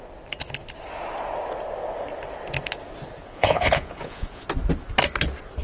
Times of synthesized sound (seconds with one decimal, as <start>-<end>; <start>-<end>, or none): 3.2-4.4